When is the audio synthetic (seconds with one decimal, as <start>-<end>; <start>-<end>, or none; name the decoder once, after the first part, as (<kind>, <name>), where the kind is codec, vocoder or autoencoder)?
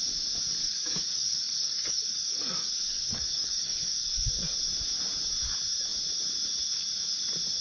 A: 0.6-4.3 (codec, DAC)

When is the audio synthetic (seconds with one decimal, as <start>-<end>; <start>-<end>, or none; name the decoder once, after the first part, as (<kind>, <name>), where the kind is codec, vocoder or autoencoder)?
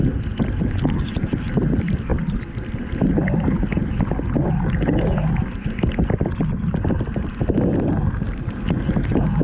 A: none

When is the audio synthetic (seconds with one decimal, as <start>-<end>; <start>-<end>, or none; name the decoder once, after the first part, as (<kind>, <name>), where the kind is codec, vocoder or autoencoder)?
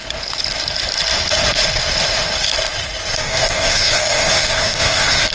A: 3.2-5.3 (codec, DAC)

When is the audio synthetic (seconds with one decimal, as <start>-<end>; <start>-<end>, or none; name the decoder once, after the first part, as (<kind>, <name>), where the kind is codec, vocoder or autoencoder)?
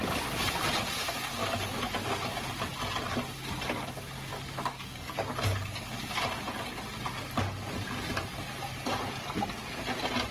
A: 1.4-2.3 (codec, DAC); 4.3-6.1